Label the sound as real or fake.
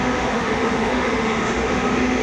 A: fake